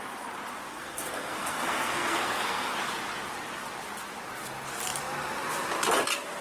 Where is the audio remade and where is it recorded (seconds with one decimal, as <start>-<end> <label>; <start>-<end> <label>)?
0.0-0.7 recorded; 0.7-2.8 remade; 2.8-6.4 recorded